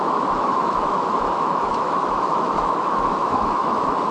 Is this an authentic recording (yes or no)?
no